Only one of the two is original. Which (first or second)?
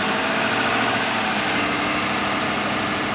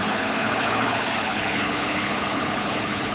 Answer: first